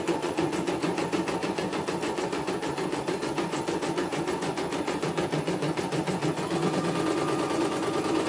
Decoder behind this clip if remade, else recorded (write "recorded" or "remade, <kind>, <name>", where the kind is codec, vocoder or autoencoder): remade, vocoder, Vocos